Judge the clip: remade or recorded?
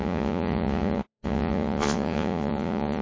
remade